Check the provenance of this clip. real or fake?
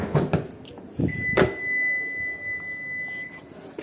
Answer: real